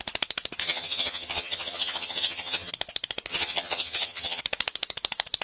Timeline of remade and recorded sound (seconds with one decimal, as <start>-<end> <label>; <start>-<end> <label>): 0.0-0.6 recorded; 0.6-2.7 remade; 2.7-3.3 recorded; 3.3-4.4 remade; 4.4-5.4 recorded